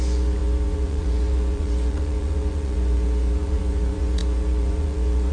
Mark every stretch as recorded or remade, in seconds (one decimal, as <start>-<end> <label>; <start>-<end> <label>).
0.0-5.3 remade